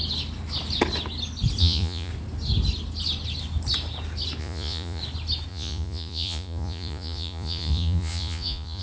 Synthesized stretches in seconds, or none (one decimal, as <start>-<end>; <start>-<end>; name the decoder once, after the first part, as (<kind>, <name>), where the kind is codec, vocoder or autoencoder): 1.6-2.1 (vocoder, Vocos); 4.4-5.0; 5.5-8.8